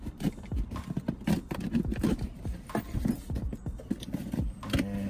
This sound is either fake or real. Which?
real